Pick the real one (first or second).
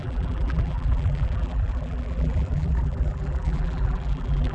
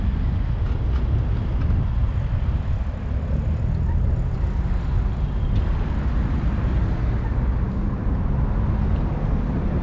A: second